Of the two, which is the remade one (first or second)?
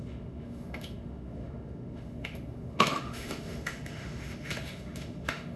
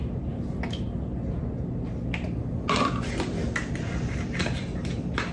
first